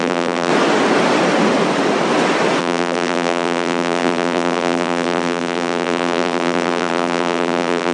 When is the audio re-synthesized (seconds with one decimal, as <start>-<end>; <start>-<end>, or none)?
0.0-0.5; 2.6-7.9